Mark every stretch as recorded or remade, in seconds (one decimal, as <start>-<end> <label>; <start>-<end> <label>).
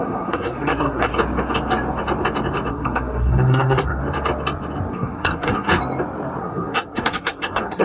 0.0-1.1 remade; 1.1-2.7 recorded; 2.7-4.0 remade; 4.0-4.9 recorded; 4.9-5.7 remade; 5.7-6.4 recorded; 6.4-7.8 remade